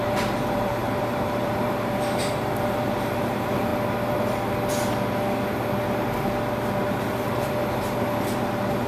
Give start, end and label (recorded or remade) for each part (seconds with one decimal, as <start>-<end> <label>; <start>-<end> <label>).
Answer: 0.0-3.7 remade; 3.7-6.9 recorded; 6.9-8.9 remade